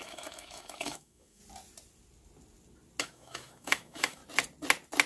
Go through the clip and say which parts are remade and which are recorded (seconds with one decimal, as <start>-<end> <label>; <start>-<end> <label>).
0.0-1.4 remade; 1.4-3.0 recorded; 3.0-4.2 remade; 4.2-5.1 recorded